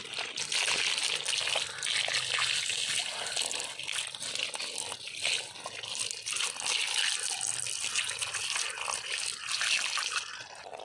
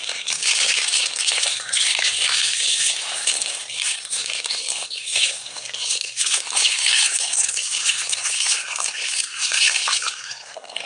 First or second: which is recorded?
first